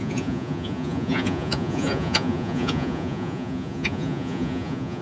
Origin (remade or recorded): remade